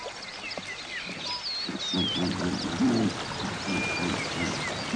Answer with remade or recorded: recorded